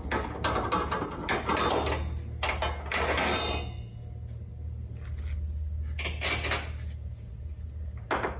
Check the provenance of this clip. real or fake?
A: real